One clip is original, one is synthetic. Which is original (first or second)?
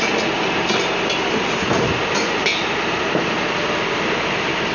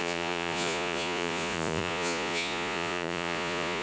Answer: first